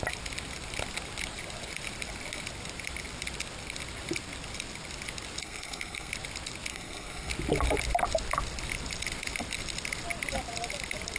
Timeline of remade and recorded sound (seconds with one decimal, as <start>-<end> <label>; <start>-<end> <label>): 0.0-5.4 recorded; 5.4-6.1 remade; 6.1-6.7 recorded; 6.7-7.3 remade; 7.3-11.2 recorded